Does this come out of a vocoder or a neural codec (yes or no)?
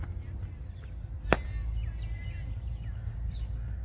no